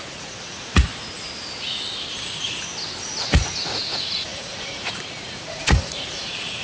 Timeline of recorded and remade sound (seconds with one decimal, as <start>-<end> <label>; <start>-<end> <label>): 0.0-0.9 remade; 0.9-2.2 recorded; 2.2-2.7 remade; 2.7-3.2 recorded; 3.2-6.6 remade

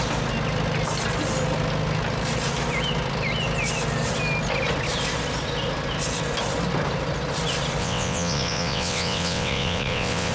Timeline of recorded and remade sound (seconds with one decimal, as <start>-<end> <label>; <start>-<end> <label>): 0.0-7.8 recorded; 7.8-10.3 remade

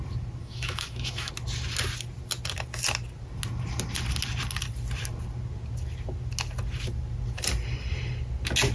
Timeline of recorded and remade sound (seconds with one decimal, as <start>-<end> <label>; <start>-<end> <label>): 0.0-0.4 recorded; 0.4-1.3 remade; 1.3-8.7 recorded

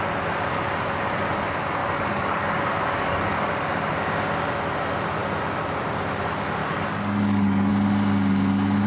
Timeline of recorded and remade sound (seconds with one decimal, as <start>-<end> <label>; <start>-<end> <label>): 0.0-1.8 recorded; 1.8-3.5 remade; 3.5-6.6 recorded; 6.6-7.7 remade; 7.7-8.9 recorded

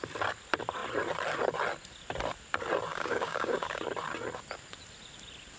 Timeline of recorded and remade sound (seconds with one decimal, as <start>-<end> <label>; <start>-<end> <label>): 0.0-2.9 recorded; 2.9-3.8 remade; 3.8-5.6 recorded

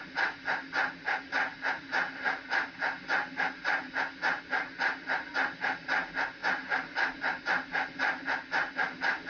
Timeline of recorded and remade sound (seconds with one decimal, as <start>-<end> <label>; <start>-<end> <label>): 0.0-9.3 recorded